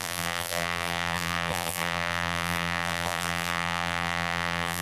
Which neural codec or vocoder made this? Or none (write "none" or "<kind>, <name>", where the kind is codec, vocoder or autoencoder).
vocoder, BigVGAN v2